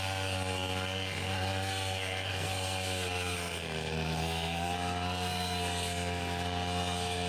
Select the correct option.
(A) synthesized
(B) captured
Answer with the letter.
A